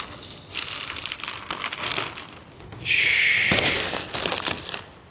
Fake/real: real